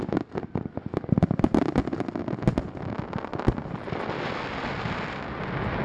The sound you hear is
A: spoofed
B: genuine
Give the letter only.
B